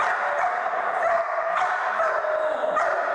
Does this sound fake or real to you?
real